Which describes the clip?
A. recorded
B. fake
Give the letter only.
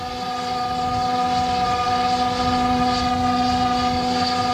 A